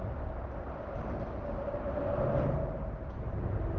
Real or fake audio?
real